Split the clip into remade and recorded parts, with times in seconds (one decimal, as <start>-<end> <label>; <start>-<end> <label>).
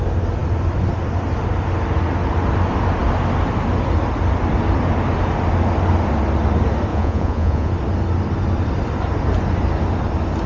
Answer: 0.0-6.9 recorded; 6.9-7.7 remade; 7.7-10.5 recorded